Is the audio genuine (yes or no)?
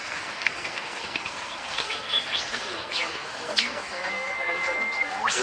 no